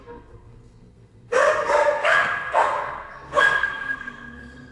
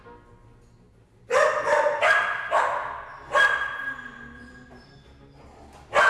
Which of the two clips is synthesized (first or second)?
first